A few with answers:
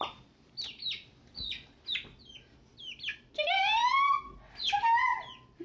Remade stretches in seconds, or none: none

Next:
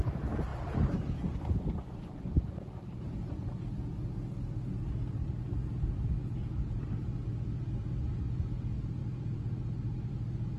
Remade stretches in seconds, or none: 6.2-6.9